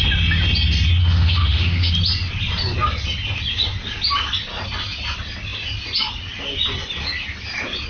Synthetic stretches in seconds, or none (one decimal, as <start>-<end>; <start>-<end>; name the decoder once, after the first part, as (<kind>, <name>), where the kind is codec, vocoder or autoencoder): 1.0-1.9 (autoencoder, DAC-VAE)